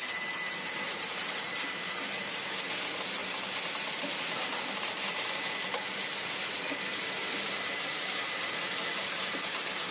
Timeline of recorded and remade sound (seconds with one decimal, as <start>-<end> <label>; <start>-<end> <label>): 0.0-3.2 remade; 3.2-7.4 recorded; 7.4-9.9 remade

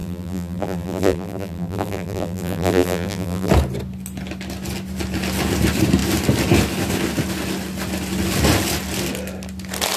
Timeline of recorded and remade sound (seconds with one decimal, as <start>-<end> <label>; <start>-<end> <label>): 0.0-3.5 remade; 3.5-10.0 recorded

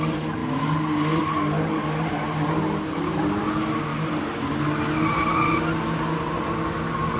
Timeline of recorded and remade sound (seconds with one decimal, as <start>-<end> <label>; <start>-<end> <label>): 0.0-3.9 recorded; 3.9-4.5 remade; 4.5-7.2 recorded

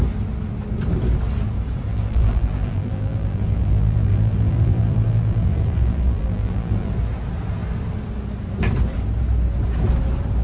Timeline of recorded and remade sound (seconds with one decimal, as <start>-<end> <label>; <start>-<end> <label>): 0.0-1.9 recorded; 1.9-6.9 remade; 6.9-10.4 recorded

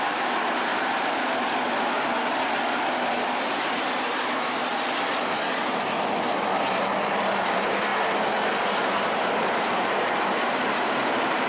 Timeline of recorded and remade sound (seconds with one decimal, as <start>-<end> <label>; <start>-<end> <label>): 0.0-0.7 remade; 0.7-3.3 recorded; 3.3-4.7 remade; 4.7-7.3 recorded; 7.3-7.9 remade; 7.9-8.6 recorded; 8.6-11.5 remade

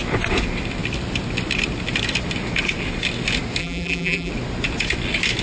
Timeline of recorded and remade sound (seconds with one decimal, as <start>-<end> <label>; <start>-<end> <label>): 0.0-3.6 recorded; 3.6-4.3 remade; 4.3-5.4 recorded